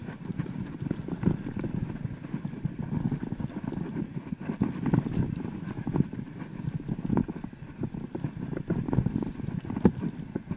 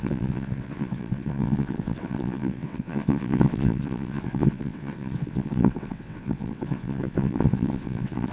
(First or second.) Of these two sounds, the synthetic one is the second